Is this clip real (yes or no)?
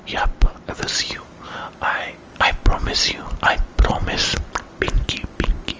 yes